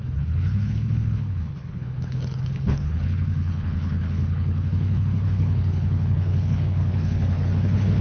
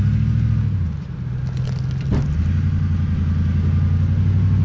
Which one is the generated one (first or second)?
first